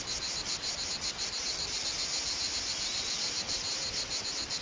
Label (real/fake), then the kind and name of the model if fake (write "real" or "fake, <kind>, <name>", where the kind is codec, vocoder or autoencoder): real